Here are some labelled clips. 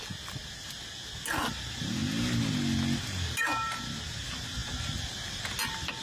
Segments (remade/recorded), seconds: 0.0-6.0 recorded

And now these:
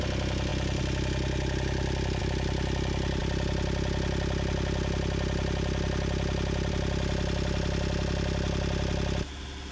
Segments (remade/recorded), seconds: 0.0-9.7 recorded

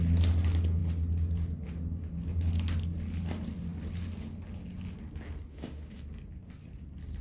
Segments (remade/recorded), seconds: 0.0-5.5 recorded; 5.5-6.0 remade; 6.0-7.2 recorded

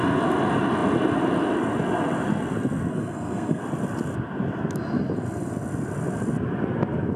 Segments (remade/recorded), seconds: 0.0-2.9 recorded; 2.9-3.6 remade; 3.6-7.2 recorded

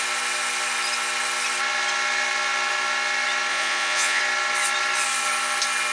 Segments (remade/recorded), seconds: 0.0-3.5 recorded; 3.5-4.2 remade; 4.2-5.9 recorded